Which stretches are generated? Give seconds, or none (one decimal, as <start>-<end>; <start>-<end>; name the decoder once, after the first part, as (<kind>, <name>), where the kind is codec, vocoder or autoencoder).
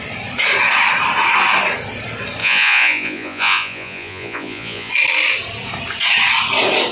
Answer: 2.4-4.9 (vocoder, Vocos)